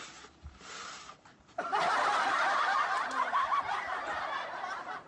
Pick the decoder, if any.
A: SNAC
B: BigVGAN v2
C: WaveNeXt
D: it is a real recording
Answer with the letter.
B